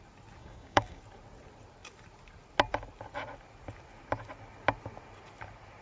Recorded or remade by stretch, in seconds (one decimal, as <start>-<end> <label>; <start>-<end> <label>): 0.0-0.4 recorded; 0.4-1.0 remade; 1.0-5.8 recorded